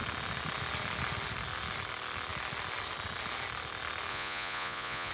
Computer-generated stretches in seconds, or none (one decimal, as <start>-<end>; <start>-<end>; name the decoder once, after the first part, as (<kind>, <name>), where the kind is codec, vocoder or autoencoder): 4.1-5.1 (vocoder, Vocos)